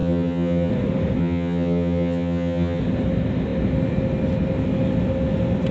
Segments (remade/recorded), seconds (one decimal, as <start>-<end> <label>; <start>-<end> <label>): 0.0-0.7 remade; 0.7-1.2 recorded; 1.2-2.8 remade; 2.8-5.7 recorded